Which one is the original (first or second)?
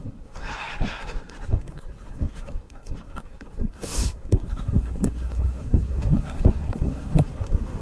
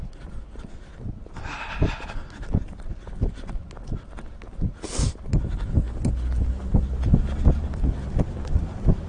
second